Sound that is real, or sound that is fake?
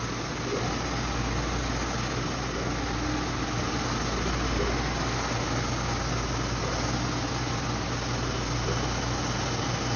real